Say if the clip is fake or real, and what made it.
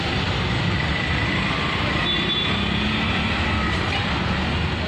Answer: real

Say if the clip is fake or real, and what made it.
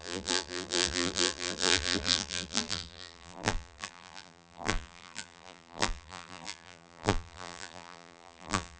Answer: fake, vocoder, BigVGAN v2